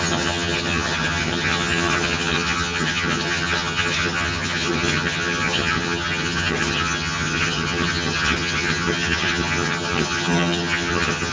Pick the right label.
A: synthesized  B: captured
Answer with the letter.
A